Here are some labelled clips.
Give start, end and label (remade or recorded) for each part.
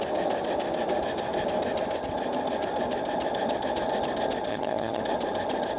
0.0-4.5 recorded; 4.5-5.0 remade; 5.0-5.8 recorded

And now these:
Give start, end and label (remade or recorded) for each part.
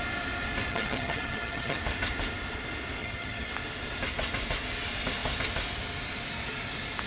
0.0-0.7 recorded; 0.7-1.8 remade; 1.8-3.0 recorded; 3.0-3.5 remade; 3.5-7.1 recorded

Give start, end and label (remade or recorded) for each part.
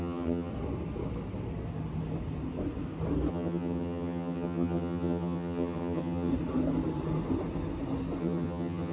0.0-0.5 remade; 0.5-3.3 recorded; 3.3-6.3 remade; 6.3-8.2 recorded; 8.2-8.9 remade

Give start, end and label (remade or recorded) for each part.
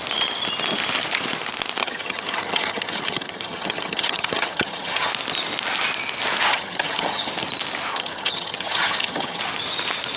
0.0-1.8 recorded; 1.8-5.1 remade; 5.1-6.5 recorded; 6.5-7.3 remade; 7.3-7.9 recorded; 7.9-9.4 remade; 9.4-10.2 recorded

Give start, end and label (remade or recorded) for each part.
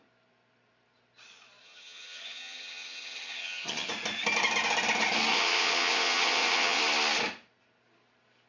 0.0-1.6 recorded; 1.6-3.9 remade; 3.9-5.3 recorded; 5.3-6.8 remade; 6.8-8.5 recorded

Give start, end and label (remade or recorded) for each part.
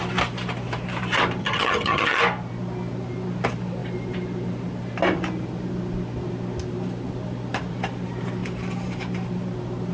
0.0-1.4 recorded; 1.4-2.2 remade; 2.2-9.9 recorded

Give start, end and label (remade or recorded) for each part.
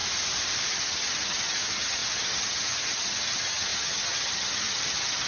0.0-0.7 recorded; 0.7-5.3 remade